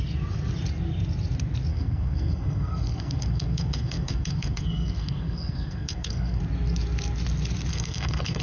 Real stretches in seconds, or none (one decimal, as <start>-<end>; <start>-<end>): 0.0-1.7; 6.4-7.7